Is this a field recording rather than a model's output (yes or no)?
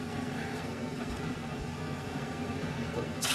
no